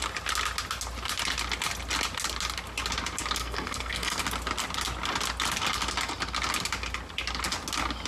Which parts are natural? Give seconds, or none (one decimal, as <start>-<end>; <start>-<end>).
0.0-3.4; 4.2-8.1